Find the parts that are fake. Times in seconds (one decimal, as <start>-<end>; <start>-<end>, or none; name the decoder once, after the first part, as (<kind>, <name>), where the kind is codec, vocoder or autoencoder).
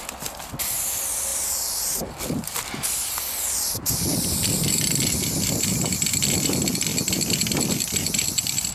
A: 1.3-2.9 (vocoder, BigVGAN v2); 4.1-5.9